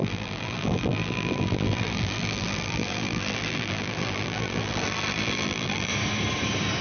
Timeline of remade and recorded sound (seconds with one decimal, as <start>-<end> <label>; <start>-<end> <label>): 0.0-5.9 remade; 5.9-6.8 recorded